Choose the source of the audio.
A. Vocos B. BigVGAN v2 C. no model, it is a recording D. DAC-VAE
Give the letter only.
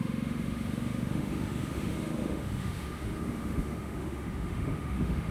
D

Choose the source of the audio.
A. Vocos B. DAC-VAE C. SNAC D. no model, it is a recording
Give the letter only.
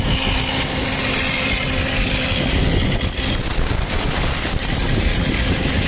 D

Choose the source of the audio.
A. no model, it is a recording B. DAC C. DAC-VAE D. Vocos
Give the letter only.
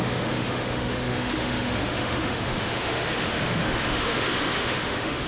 C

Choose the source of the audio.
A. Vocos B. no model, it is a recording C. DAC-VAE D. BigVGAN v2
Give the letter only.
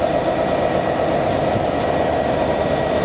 B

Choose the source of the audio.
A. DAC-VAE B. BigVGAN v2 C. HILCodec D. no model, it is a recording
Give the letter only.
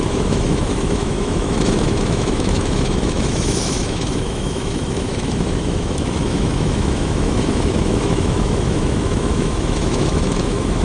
A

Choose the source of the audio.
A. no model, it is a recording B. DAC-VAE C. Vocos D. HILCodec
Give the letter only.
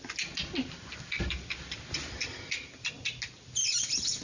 A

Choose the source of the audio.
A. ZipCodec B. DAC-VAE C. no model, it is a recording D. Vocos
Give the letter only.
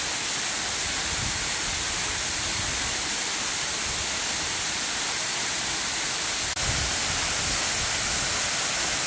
C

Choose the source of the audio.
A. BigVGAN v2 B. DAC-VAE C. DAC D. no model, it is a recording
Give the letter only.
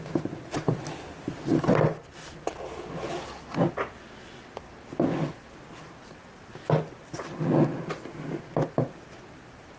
D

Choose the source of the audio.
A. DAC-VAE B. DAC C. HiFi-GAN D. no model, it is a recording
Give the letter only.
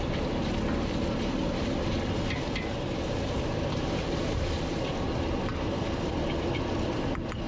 D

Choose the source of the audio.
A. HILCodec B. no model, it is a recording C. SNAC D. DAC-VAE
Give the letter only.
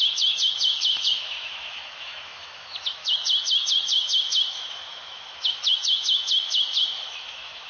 D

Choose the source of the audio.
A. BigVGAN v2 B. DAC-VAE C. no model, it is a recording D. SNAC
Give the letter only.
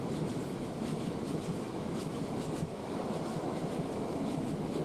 B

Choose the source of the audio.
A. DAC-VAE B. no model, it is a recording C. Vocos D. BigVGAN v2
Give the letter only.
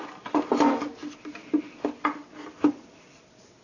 B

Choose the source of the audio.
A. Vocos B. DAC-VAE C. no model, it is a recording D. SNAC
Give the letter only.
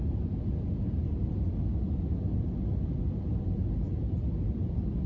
C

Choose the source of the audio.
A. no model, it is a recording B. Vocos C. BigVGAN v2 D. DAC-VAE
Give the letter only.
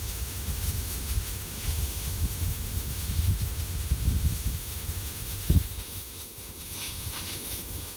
D